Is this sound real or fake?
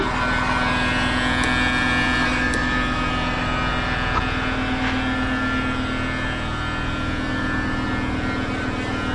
real